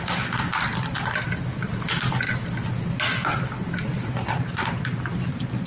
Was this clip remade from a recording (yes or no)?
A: no